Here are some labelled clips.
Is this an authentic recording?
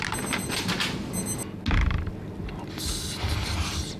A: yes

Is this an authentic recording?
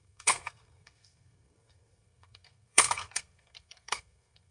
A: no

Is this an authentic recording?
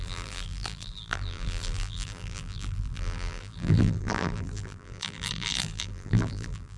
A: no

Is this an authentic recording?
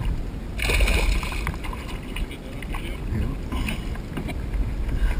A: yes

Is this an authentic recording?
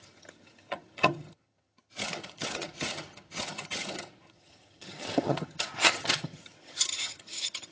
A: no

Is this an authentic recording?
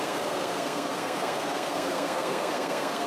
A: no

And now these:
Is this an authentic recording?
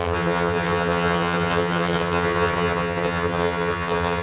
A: no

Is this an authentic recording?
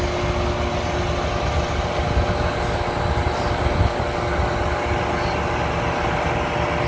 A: yes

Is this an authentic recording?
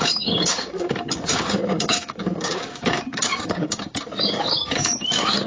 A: no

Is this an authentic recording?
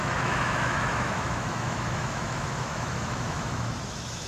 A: no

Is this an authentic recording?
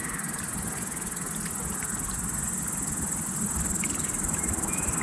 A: yes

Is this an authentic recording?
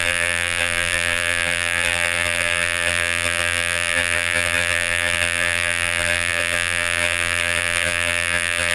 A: no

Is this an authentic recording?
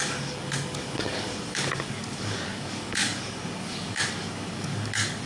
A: no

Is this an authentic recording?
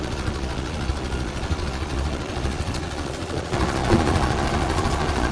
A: no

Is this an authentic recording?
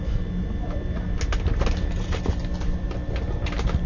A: yes